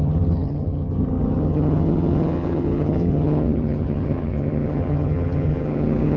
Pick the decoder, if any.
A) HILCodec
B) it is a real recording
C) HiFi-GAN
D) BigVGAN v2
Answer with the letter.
C